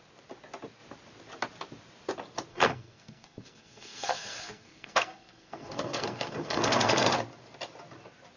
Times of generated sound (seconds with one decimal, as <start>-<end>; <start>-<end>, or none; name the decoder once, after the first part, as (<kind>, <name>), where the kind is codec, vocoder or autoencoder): 2.5-7.1 (codec, SNAC)